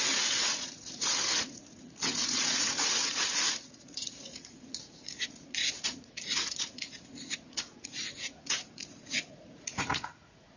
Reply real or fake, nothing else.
fake